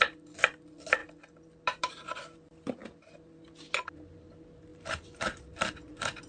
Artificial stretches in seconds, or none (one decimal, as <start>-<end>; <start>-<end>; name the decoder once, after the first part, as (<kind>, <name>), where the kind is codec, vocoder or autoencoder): 0.0-6.3 (vocoder, BigVGAN v2)